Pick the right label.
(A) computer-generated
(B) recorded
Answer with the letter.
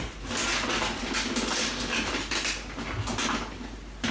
B